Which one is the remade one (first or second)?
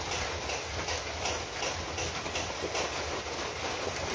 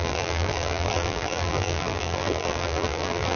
second